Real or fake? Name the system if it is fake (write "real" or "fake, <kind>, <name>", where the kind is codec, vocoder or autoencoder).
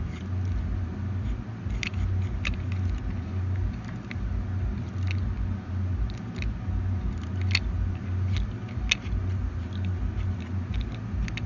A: real